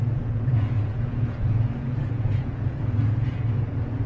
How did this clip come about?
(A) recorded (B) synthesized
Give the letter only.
B